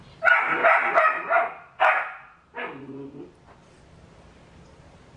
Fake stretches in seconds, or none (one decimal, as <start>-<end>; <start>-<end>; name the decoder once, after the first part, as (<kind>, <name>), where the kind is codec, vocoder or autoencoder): none